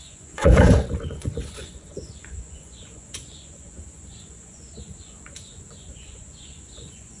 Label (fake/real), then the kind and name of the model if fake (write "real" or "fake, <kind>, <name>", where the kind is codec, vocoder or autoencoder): fake, vocoder, Vocos